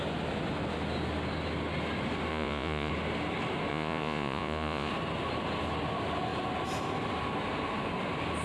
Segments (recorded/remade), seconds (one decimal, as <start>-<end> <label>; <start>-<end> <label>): 0.0-2.3 recorded; 2.3-2.9 remade; 2.9-3.7 recorded; 3.7-4.9 remade; 4.9-8.4 recorded

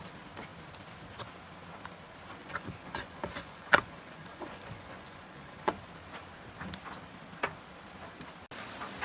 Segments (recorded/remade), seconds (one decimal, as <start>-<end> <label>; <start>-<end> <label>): 0.0-2.4 recorded; 2.4-5.7 remade; 5.7-9.0 recorded